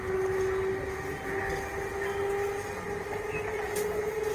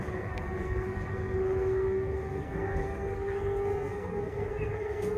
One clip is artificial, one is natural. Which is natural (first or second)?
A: first